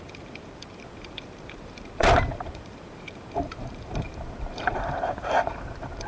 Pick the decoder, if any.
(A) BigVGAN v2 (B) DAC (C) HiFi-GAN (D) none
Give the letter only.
A